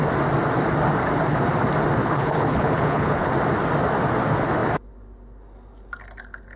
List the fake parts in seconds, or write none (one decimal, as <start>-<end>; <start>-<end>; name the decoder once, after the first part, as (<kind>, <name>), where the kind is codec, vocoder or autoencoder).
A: 2.0-3.3 (codec, HILCodec)